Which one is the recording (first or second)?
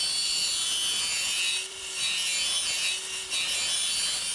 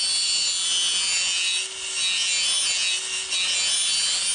second